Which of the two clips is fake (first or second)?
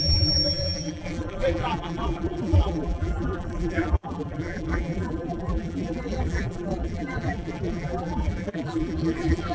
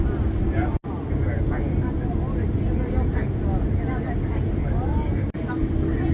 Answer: first